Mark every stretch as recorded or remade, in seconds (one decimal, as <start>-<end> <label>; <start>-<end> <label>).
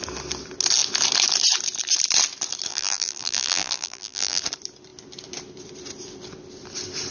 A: 0.0-2.7 recorded; 2.7-4.4 remade; 4.4-7.1 recorded